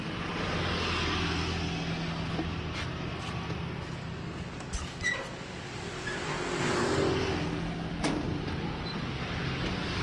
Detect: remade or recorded recorded